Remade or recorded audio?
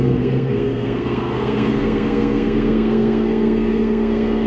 remade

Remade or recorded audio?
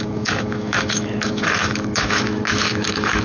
remade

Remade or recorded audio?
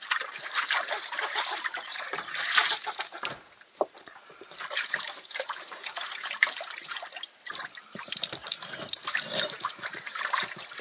remade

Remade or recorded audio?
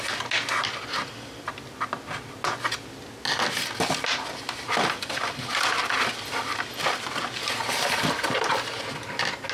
recorded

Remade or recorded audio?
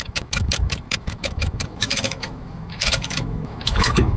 remade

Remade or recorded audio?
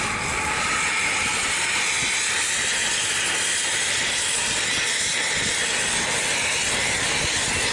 recorded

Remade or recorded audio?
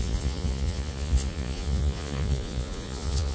remade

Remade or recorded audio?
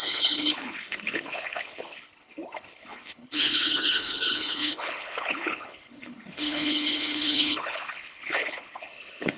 remade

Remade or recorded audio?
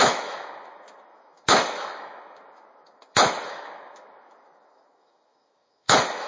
remade